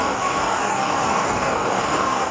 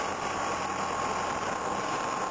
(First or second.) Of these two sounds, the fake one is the first